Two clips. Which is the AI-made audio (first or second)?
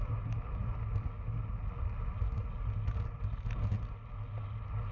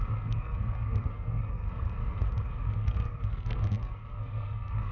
second